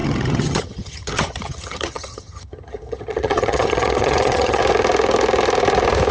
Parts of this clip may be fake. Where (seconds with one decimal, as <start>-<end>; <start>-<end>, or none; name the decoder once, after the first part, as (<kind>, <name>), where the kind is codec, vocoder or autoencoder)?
0.0-4.6 (vocoder, HiFi-GAN)